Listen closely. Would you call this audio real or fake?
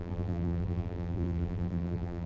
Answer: fake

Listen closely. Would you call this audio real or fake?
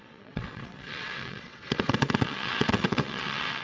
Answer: fake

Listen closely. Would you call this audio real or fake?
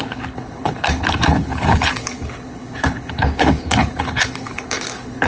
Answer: fake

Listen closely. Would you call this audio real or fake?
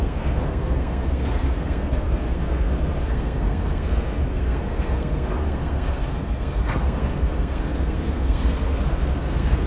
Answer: fake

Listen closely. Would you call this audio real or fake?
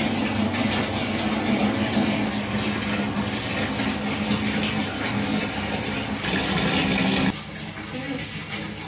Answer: real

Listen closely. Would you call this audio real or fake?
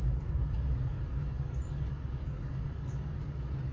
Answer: fake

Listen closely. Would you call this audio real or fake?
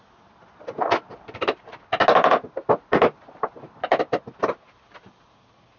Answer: real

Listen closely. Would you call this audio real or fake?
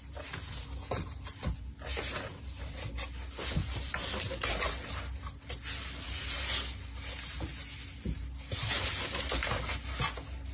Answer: real